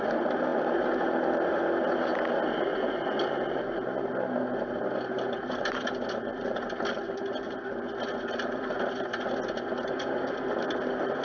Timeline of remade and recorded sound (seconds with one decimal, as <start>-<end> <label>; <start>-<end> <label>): 0.0-11.2 recorded